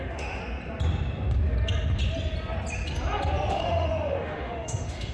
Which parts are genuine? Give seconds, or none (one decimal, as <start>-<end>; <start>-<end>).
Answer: 0.4-3.5